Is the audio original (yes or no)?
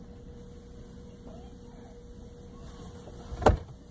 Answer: yes